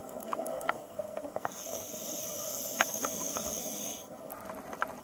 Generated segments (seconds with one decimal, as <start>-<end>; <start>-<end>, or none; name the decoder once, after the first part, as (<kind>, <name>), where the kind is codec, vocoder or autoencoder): 0.0-4.3 (codec, SNAC)